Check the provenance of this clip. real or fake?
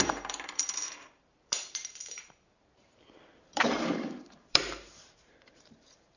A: fake